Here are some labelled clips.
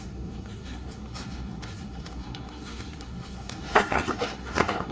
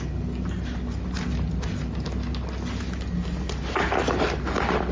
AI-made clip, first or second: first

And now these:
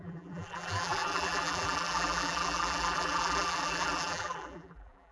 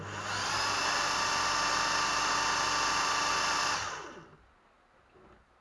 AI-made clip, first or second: first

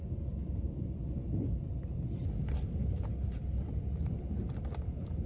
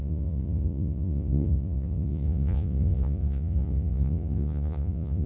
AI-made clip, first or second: second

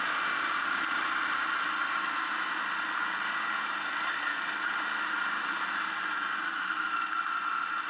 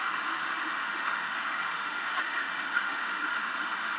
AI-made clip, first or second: second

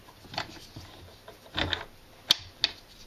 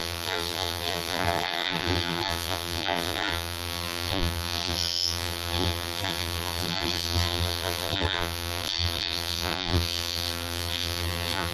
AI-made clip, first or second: second